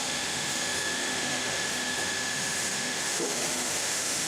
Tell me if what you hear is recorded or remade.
remade